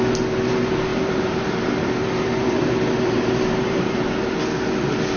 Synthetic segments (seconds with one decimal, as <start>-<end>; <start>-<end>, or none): 0.9-4.0